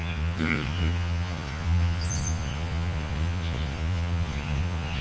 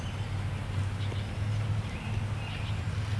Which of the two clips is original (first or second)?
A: second